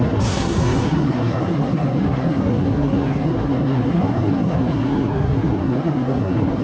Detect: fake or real fake